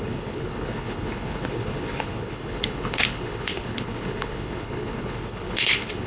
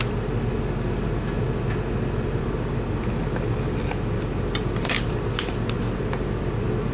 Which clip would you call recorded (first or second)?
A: second